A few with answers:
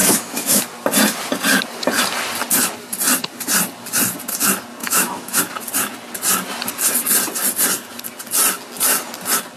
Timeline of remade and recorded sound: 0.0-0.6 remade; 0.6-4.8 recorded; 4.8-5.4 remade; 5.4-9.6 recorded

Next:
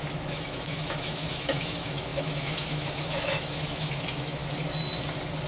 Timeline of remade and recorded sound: 0.0-4.4 remade; 4.4-5.5 recorded

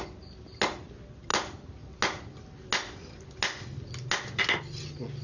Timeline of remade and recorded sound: 0.0-5.2 recorded

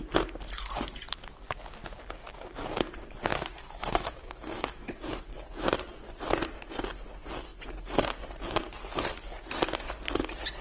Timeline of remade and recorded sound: 0.0-3.3 recorded; 3.3-5.2 remade; 5.2-10.6 recorded

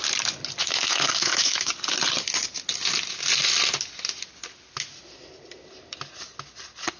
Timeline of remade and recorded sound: 0.0-0.6 recorded; 0.6-1.7 remade; 1.7-7.0 recorded

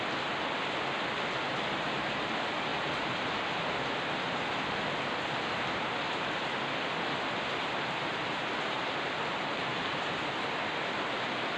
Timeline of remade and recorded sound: 0.0-11.6 recorded

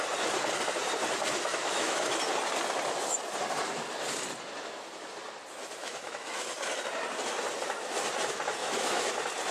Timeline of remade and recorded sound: 0.0-1.5 recorded; 1.5-2.1 remade; 2.1-5.8 recorded; 5.8-6.3 remade; 6.3-8.6 recorded; 8.6-9.1 remade; 9.1-9.5 recorded

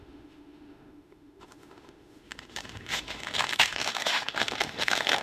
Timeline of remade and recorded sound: 0.0-5.2 remade